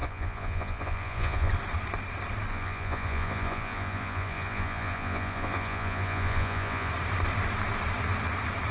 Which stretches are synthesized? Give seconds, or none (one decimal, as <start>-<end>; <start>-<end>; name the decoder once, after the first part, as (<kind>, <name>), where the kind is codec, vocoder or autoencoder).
0.0-1.5 (vocoder, Vocos); 2.5-6.9